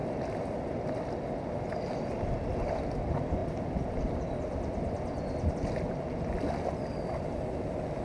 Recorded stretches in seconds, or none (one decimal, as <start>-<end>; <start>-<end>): 0.0-8.0